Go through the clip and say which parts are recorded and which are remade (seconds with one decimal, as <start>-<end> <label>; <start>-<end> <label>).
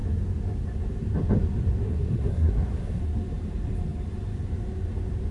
0.0-1.8 recorded; 1.8-3.0 remade; 3.0-5.3 recorded